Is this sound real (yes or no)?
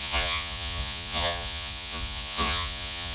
no